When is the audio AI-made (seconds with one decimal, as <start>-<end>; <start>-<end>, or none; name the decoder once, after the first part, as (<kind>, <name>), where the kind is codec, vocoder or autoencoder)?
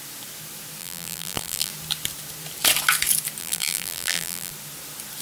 0.8-1.7 (vocoder, BigVGAN v2); 3.4-4.5